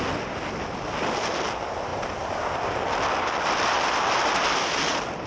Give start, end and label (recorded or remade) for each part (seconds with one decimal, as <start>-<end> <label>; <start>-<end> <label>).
0.0-5.3 recorded